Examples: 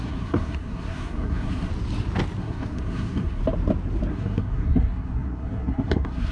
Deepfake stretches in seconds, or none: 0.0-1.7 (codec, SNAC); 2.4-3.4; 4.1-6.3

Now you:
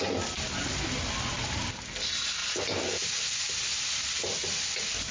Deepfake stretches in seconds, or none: none

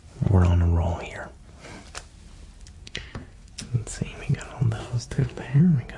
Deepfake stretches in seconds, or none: 2.8-3.5 (codec, SNAC); 4.8-5.6

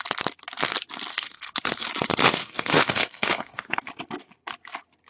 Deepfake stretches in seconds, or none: 1.1-1.9 (codec, SNAC); 2.4-3.9

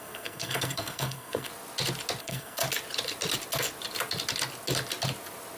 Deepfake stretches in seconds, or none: 0.0-1.5 (codec, SNAC); 2.2-2.6